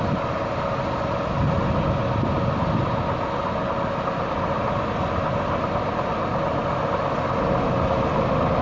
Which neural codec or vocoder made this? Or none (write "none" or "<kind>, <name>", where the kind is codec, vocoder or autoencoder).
none